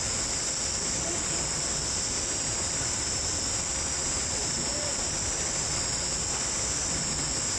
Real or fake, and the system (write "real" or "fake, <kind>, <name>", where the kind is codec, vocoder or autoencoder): real